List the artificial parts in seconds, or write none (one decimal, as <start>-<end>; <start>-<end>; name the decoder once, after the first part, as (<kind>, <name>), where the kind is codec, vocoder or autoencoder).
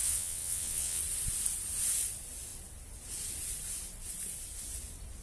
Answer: 0.0-1.0 (vocoder, WaveNeXt)